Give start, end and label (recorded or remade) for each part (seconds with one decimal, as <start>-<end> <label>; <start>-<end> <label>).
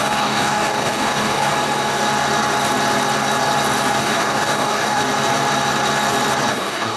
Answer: 0.0-1.5 remade; 1.5-4.0 recorded; 4.0-5.0 remade; 5.0-6.5 recorded; 6.5-7.0 remade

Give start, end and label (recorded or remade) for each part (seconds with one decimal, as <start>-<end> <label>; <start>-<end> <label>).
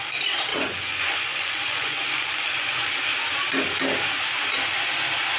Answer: 0.0-0.5 recorded; 0.5-2.9 remade; 2.9-5.4 recorded